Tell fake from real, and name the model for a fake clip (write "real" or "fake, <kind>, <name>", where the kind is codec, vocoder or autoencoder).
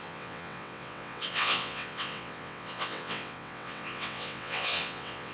fake, vocoder, WaveNeXt